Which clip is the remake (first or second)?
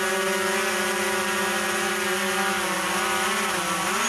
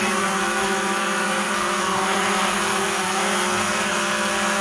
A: second